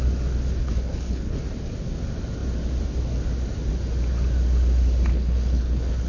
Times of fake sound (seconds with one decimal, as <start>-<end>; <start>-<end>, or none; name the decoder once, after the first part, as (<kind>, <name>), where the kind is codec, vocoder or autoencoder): 0.6-1.4 (codec, HILCodec); 5.1-6.1